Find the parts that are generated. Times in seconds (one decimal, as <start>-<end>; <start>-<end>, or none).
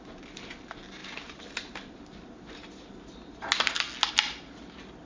none